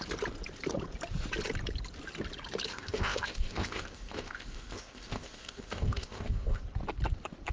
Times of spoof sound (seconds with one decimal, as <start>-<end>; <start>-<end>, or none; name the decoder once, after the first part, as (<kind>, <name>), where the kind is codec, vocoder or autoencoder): 2.7-6.6 (codec, ZipCodec)